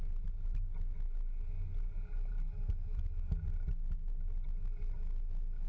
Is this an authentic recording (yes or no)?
yes